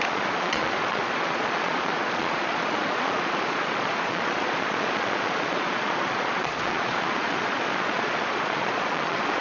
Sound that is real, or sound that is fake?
fake